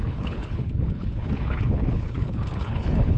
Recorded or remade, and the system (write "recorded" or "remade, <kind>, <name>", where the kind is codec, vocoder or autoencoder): remade, codec, HILCodec